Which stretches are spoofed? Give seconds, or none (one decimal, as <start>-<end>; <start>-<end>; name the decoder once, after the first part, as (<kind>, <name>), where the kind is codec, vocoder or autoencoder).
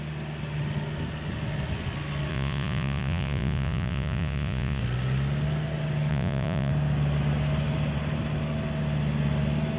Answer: 2.3-4.8 (vocoder, Vocos); 6.1-6.7